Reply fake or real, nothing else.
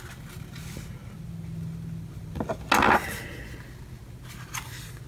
real